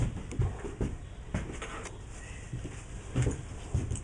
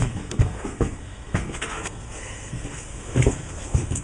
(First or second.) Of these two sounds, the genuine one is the first